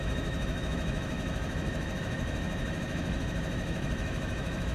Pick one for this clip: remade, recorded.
remade